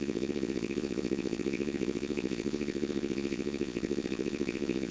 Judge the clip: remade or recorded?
remade